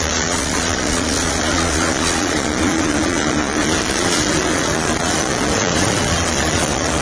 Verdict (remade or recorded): remade